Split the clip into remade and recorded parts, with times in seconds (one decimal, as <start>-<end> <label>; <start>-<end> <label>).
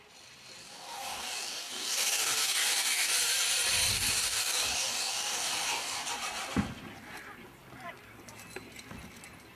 0.0-0.6 recorded; 0.6-3.1 remade; 3.1-3.9 recorded; 3.9-6.1 remade; 6.1-9.6 recorded